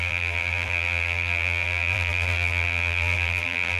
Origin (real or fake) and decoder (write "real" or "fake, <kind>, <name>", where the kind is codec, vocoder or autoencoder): fake, vocoder, BigVGAN v2